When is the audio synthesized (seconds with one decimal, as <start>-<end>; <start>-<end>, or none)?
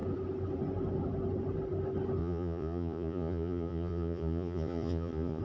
2.2-5.4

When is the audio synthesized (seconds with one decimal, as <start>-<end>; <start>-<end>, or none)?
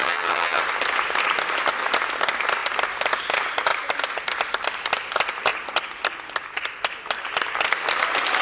0.0-0.6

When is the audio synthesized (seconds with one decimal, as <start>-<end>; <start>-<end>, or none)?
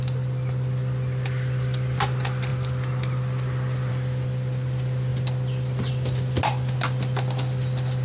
none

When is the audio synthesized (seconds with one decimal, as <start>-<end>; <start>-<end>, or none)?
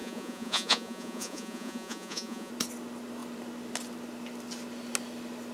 0.0-2.5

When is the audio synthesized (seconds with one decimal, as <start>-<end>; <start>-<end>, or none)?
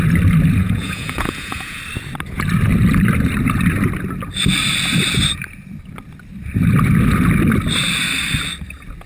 0.6-1.8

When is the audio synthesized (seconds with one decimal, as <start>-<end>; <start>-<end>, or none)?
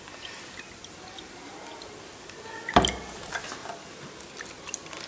3.6-4.3